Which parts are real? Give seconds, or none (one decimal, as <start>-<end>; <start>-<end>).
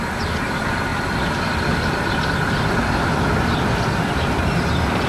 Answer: none